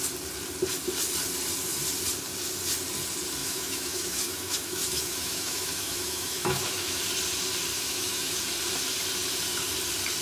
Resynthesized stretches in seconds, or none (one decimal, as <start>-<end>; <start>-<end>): 3.4-7.0; 7.7-8.4